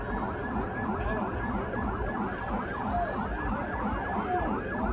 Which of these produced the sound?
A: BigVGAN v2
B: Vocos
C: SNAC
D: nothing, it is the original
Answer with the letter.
D